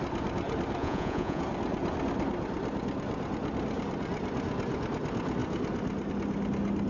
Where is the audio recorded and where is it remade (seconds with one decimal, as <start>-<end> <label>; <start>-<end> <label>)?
0.0-0.8 recorded; 0.8-1.4 remade; 1.4-6.9 recorded